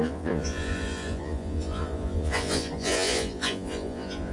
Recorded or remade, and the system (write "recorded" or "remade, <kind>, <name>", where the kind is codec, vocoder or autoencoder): remade, vocoder, Vocos